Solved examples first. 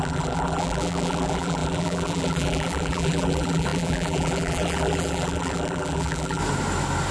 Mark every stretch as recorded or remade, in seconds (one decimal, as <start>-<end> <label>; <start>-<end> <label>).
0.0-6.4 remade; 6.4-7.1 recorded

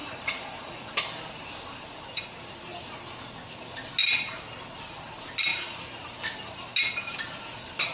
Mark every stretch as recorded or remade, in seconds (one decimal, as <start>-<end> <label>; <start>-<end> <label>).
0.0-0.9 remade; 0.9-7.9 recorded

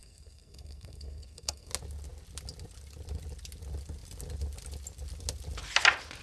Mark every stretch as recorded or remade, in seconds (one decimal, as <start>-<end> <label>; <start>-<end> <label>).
0.0-1.7 remade; 1.7-6.2 recorded

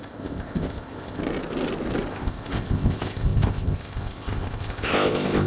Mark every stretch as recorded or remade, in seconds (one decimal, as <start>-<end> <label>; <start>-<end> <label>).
0.0-1.2 remade; 1.2-2.1 recorded; 2.1-5.5 remade

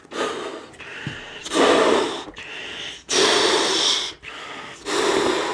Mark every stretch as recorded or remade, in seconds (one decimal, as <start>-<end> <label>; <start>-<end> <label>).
0.0-5.5 recorded

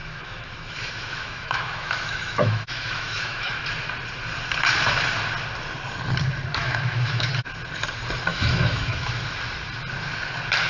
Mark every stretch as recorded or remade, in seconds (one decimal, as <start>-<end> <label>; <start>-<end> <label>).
0.0-3.6 remade; 3.6-6.5 recorded; 6.5-7.3 remade; 7.3-8.3 recorded; 8.3-9.2 remade; 9.2-10.7 recorded